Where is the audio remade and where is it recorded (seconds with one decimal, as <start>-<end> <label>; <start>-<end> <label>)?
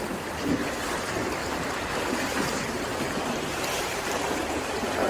0.0-2.9 recorded; 2.9-4.5 remade; 4.5-5.1 recorded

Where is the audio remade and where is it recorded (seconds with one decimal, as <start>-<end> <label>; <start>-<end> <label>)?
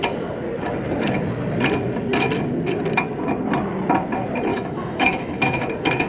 0.0-4.5 recorded; 4.5-5.6 remade; 5.6-6.1 recorded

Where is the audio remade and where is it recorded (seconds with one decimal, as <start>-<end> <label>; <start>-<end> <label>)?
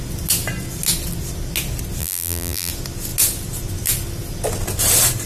0.0-2.0 recorded; 2.0-2.7 remade; 2.7-5.3 recorded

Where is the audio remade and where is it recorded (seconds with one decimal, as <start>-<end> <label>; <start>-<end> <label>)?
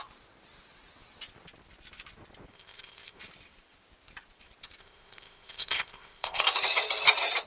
0.0-2.5 recorded; 2.5-3.2 remade; 3.2-4.8 recorded; 4.8-6.4 remade; 6.4-7.5 recorded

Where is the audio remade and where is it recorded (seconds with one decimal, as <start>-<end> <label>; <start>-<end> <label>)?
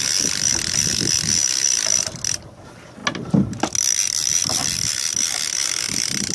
0.0-1.4 recorded; 1.4-2.2 remade; 2.2-4.3 recorded; 4.3-4.9 remade; 4.9-6.3 recorded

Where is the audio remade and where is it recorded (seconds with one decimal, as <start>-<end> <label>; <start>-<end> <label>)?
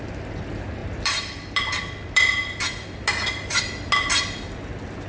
0.0-5.1 recorded